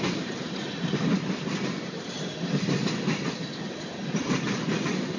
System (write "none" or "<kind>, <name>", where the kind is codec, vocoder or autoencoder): none